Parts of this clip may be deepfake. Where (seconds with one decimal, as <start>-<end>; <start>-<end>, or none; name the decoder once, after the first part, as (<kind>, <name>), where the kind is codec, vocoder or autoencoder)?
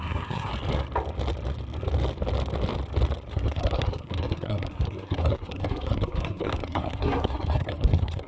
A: 0.0-0.5 (codec, SNAC); 3.3-8.3